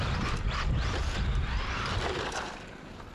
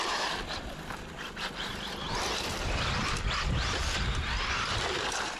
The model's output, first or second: second